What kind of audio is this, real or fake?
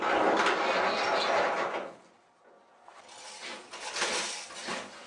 real